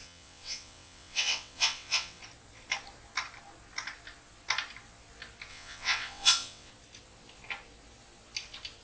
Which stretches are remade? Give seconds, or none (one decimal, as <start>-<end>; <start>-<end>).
0.0-2.2; 5.5-6.7